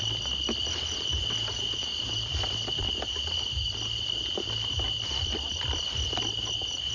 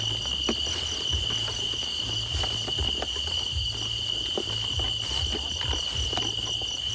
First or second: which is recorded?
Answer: second